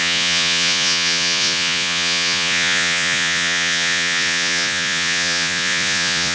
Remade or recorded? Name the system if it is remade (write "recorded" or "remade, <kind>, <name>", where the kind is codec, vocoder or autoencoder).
remade, vocoder, Vocos